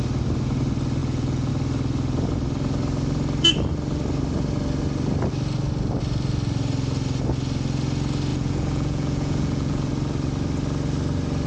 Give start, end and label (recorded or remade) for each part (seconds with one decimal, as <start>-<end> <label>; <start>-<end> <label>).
0.0-1.0 recorded; 1.0-1.5 remade; 1.5-8.3 recorded; 8.3-9.9 remade; 9.9-11.5 recorded